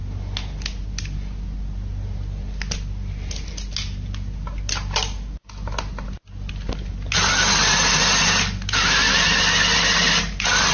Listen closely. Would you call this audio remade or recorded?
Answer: recorded